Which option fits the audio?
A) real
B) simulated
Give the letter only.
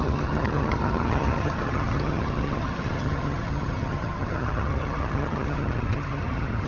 B